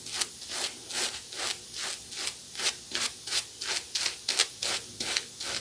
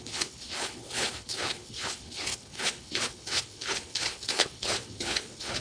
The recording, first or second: first